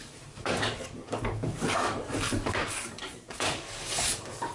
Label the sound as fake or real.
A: fake